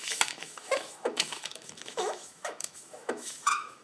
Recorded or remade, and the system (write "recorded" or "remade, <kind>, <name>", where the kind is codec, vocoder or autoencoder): remade, autoencoder, DAC-VAE